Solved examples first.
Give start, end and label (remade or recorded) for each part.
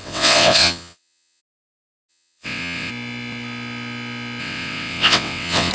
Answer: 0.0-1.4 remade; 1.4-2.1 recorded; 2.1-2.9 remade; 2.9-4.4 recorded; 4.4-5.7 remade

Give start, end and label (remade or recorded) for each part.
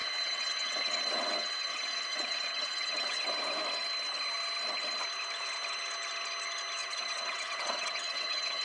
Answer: 0.0-3.3 remade; 3.3-6.8 recorded; 6.8-8.6 remade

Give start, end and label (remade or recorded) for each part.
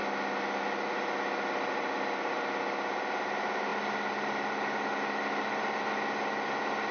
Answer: 0.0-6.9 recorded